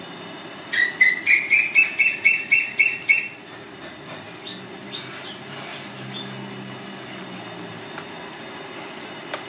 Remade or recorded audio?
recorded